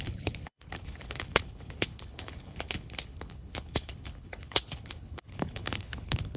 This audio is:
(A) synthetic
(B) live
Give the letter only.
A